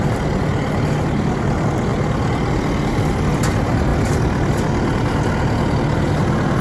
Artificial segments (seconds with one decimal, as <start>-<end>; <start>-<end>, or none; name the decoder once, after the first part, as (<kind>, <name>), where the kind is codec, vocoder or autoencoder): none